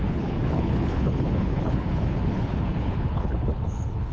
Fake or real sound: fake